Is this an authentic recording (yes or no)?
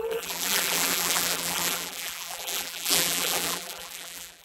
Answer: no